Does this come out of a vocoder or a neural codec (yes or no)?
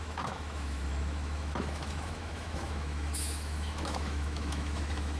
yes